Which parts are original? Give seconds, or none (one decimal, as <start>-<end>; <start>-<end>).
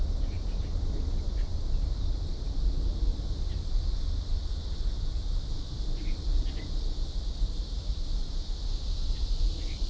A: 1.5-5.4; 6.3-7.4